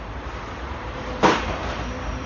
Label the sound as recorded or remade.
remade